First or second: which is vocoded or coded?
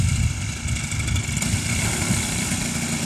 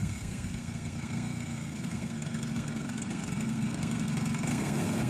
second